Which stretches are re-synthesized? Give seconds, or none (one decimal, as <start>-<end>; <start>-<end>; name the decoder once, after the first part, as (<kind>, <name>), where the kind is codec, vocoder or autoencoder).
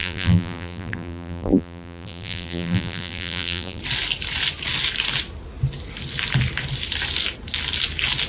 0.0-3.8 (vocoder, BigVGAN v2)